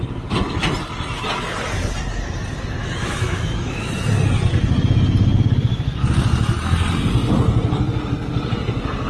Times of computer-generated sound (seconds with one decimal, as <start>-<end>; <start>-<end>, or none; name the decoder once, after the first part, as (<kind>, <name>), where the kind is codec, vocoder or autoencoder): 2.8-3.9 (autoencoder, DAC-VAE)